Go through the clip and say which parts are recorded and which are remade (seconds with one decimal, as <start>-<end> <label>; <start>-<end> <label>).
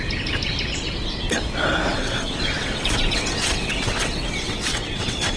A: 0.0-1.9 recorded; 1.9-5.4 remade